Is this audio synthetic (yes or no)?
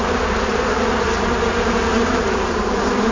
yes